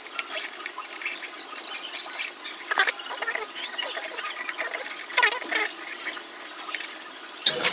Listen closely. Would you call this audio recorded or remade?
recorded